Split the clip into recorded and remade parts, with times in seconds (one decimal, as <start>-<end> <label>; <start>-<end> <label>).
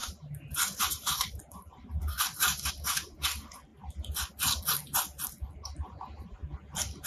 0.0-2.7 remade; 2.7-7.1 recorded